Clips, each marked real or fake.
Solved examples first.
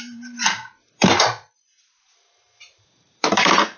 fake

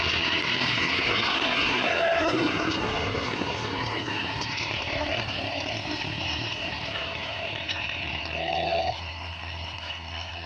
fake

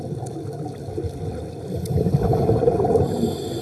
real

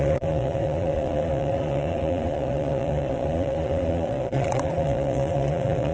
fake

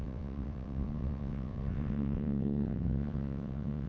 fake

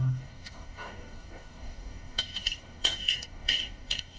fake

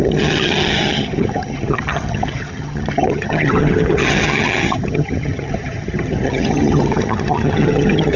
fake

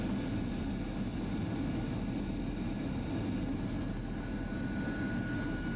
real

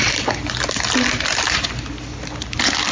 real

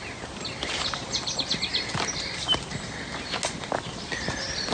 real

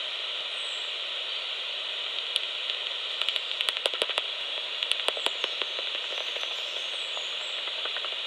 real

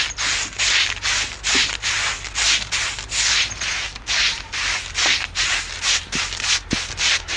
real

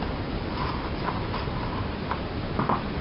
real